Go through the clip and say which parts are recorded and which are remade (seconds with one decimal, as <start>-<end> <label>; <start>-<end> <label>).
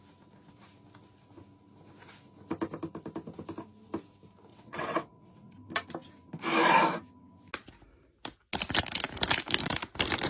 0.0-4.5 recorded; 4.5-5.5 remade; 5.5-10.3 recorded